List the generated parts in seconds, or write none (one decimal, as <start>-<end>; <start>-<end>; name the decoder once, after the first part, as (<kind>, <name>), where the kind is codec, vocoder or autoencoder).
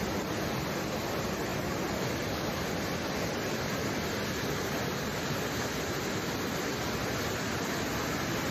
none